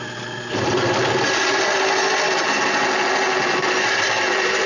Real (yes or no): yes